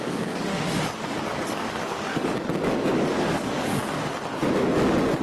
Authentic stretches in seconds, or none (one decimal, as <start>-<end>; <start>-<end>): 0.5-1.2; 3.8-5.2